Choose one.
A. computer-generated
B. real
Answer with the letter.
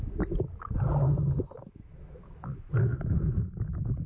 A